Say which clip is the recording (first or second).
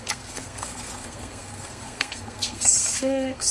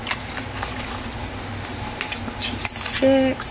second